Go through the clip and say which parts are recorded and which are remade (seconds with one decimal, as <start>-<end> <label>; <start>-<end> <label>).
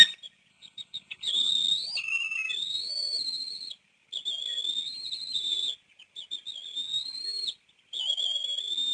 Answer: 0.0-0.5 recorded; 0.5-1.5 remade; 1.5-8.9 recorded